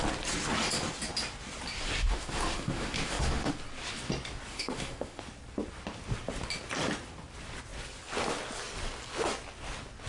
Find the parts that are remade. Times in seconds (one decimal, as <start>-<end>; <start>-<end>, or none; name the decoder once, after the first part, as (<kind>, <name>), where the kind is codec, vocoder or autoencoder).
2.1-3.5 (autoencoder, DAC-VAE); 4.5-5.2